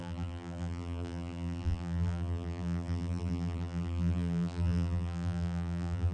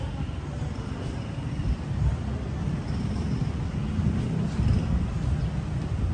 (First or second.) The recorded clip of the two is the second